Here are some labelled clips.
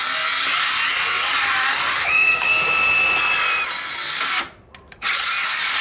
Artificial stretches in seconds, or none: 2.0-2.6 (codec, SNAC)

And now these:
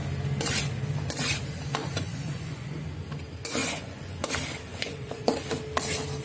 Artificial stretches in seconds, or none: 1.8-2.8 (vocoder, Vocos); 3.6-4.3; 4.7-5.3

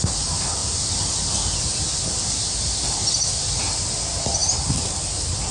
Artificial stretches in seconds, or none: none